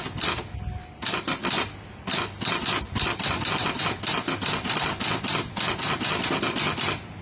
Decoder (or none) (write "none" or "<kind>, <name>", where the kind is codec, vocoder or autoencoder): none